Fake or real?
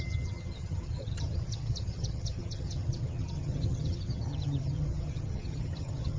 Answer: fake